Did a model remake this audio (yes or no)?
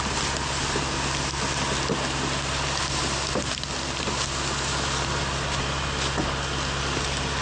no